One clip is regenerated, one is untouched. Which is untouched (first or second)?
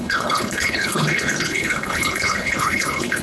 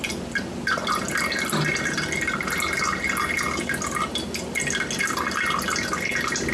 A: second